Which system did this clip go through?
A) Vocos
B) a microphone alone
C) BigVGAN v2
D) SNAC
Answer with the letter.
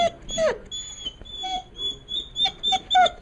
B